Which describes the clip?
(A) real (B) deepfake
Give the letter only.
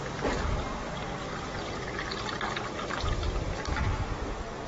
A